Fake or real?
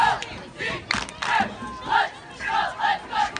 real